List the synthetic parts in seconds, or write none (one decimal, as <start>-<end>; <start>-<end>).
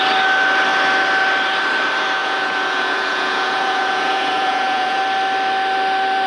2.2-5.0